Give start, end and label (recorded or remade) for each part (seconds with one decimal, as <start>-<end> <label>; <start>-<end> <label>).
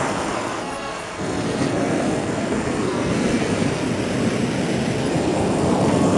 0.0-3.8 remade; 3.8-5.0 recorded; 5.0-6.2 remade